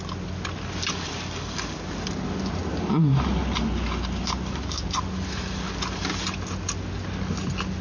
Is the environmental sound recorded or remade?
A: recorded